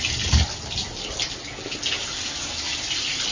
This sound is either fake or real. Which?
real